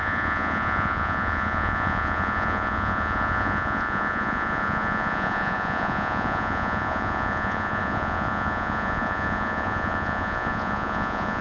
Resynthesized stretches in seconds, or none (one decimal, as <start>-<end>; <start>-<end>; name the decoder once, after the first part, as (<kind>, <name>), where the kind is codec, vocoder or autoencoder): 0.0-11.4 (vocoder, Vocos)